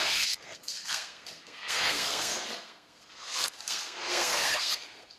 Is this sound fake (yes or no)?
yes